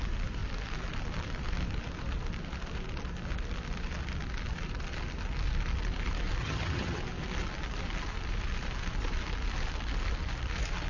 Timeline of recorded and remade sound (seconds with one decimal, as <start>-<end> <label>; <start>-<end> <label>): 0.0-6.4 recorded; 6.4-7.0 remade; 7.0-10.9 recorded